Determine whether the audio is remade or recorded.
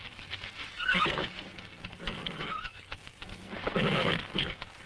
remade